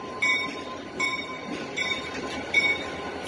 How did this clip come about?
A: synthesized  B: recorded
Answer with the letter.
A